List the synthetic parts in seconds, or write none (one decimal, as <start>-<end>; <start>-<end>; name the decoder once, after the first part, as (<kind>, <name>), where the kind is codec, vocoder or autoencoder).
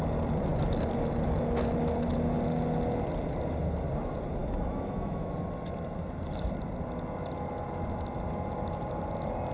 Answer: 4.4-5.3 (autoencoder, DAC-VAE)